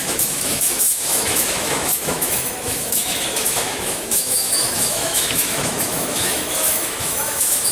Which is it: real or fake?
fake